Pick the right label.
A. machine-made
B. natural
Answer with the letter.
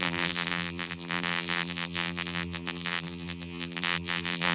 A